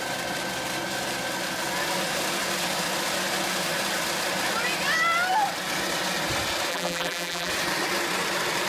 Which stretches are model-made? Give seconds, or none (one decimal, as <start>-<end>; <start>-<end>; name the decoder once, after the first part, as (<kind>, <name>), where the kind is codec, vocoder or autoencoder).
6.7-7.5 (vocoder, BigVGAN v2)